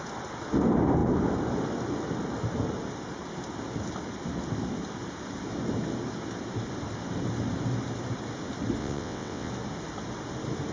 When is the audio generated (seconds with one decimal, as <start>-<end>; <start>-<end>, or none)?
8.8-9.5